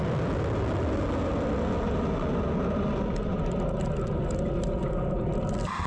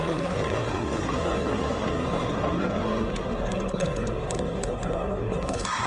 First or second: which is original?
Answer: first